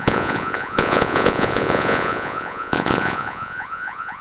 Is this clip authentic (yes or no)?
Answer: no